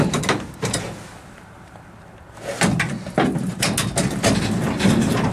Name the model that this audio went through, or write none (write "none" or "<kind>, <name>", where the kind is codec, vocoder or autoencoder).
none